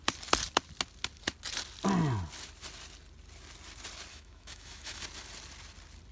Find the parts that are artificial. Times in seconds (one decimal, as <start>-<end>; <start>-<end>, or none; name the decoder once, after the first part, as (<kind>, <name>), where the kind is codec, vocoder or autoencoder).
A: 4.1-5.0 (autoencoder, DAC-VAE)